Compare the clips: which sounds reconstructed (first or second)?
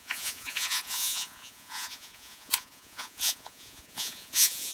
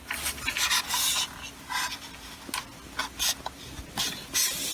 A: first